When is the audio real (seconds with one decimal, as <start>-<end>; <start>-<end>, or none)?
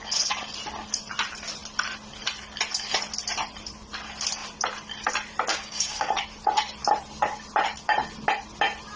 0.0-5.5; 6.1-9.0